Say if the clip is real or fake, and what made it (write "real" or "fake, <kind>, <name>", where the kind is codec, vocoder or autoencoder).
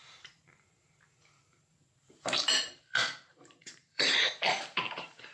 fake, vocoder, BigVGAN v2